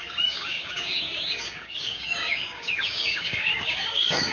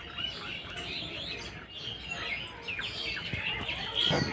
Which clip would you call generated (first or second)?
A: first